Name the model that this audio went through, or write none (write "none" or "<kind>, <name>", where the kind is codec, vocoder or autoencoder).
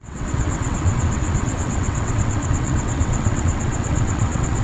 vocoder, WaveNeXt